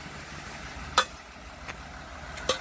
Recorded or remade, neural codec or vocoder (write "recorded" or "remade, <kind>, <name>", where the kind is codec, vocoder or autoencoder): recorded